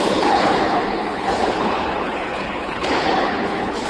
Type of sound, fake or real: fake